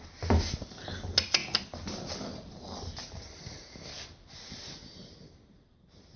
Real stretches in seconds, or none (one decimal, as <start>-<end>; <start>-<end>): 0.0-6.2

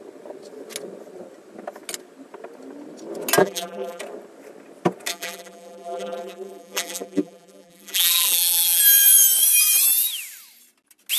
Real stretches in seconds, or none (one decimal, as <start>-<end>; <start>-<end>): 0.0-3.4; 4.0-5.1; 8.8-11.2

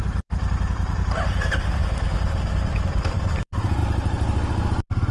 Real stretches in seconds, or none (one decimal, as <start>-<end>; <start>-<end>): 3.8-5.1

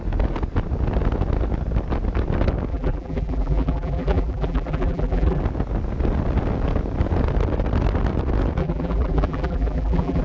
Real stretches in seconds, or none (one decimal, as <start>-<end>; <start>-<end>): 0.0-2.7; 5.4-8.6